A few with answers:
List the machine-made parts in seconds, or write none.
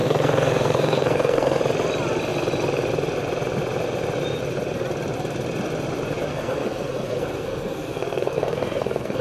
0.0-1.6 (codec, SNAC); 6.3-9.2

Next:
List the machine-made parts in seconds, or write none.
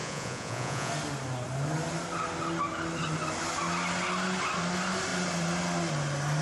0.0-0.9 (vocoder, Vocos)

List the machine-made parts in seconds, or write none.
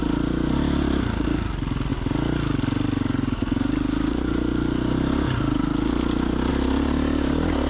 none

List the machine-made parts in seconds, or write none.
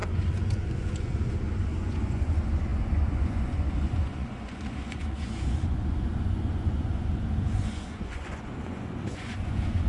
0.0-9.9 (vocoder, Vocos)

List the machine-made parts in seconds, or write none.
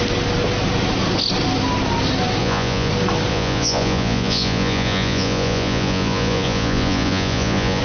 2.4-2.9 (vocoder, Vocos); 3.3-7.8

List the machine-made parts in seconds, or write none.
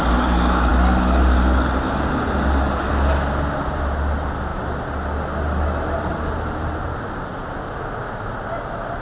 none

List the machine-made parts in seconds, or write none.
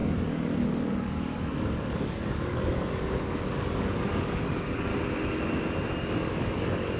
0.0-4.9 (codec, DAC); 6.2-7.0